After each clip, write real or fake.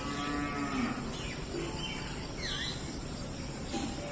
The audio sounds real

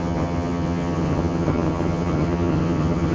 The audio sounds fake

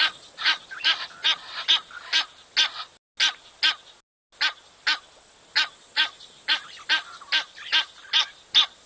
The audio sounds real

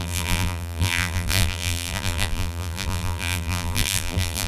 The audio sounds fake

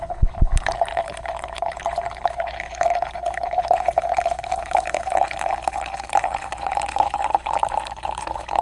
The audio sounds fake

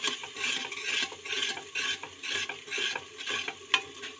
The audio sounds real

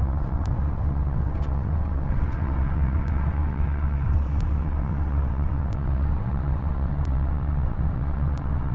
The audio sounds fake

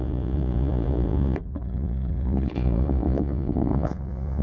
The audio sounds fake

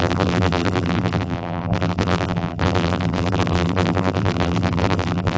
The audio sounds fake